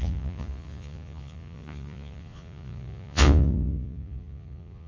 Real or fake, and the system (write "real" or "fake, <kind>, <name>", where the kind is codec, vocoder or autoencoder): fake, vocoder, Vocos